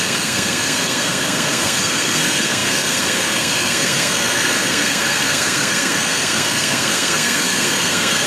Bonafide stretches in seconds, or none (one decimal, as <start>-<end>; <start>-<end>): none